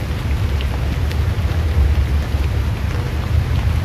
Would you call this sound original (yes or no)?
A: yes